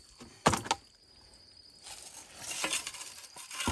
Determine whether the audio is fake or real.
real